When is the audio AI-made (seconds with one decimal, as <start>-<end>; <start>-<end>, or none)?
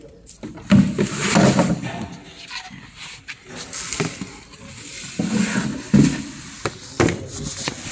none